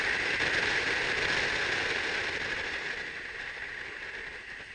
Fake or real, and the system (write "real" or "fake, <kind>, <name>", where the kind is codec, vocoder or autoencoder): real